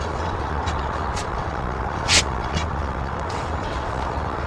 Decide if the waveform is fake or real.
fake